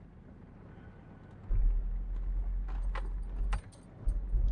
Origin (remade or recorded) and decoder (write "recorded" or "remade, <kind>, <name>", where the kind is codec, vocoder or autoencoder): recorded